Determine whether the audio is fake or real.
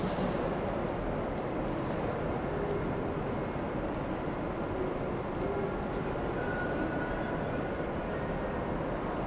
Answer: real